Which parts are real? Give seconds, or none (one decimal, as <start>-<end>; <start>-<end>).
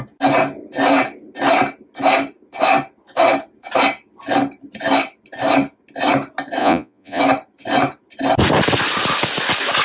0.0-6.6; 7.2-9.8